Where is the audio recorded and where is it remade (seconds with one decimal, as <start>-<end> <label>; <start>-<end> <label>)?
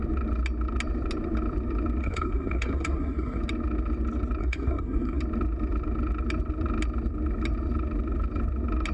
0.0-2.0 recorded; 2.0-3.4 remade; 3.4-4.4 recorded; 4.4-5.2 remade; 5.2-8.9 recorded